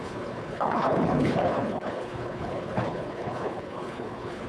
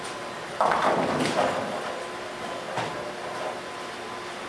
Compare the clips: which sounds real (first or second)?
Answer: second